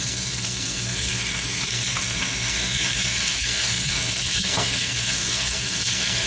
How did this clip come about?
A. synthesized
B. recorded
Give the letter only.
A